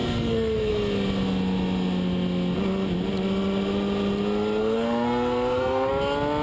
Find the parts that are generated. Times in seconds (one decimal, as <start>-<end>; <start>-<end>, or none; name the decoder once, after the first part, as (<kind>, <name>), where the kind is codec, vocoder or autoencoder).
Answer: 0.0-0.7 (codec, SNAC); 4.6-5.9

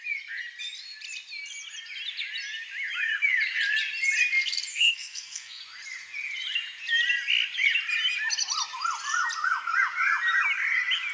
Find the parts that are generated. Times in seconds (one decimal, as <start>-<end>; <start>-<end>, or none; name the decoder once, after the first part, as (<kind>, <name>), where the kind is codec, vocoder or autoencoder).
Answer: 4.7-5.6 (codec, SNAC)

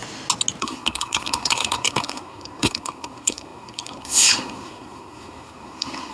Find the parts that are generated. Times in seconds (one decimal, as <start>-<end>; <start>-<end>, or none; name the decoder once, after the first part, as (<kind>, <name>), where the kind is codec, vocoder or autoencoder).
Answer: 0.6-6.1 (codec, SNAC)

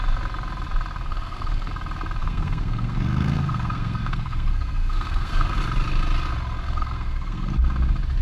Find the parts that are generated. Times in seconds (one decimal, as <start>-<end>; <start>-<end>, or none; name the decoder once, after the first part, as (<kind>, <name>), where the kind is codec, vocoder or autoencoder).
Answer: 1.1-1.7 (codec, SNAC); 2.2-5.6; 6.6-7.5

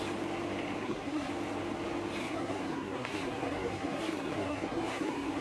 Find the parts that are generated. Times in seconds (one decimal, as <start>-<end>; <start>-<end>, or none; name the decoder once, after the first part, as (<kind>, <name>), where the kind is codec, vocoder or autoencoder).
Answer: 0.8-1.3 (codec, SNAC); 2.2-5.4

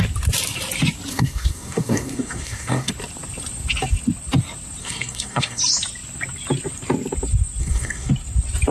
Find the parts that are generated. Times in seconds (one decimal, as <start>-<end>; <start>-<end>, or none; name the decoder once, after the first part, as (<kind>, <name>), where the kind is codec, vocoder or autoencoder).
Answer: 1.1-2.9 (codec, SNAC); 4.8-5.6; 7.6-8.1

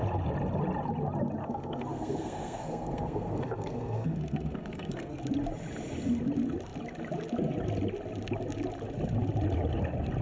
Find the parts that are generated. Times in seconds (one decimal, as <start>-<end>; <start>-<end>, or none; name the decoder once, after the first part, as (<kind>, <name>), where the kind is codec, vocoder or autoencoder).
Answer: 1.4-5.2 (codec, SNAC)